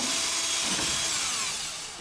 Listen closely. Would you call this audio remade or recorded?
recorded